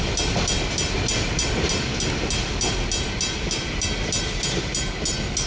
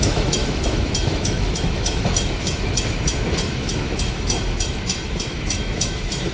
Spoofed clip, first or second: second